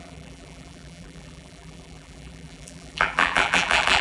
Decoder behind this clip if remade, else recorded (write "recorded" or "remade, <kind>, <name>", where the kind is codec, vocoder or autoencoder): remade, vocoder, BigVGAN v2